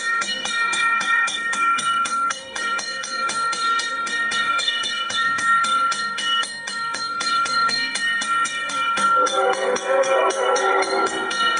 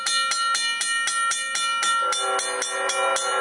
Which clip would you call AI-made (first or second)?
first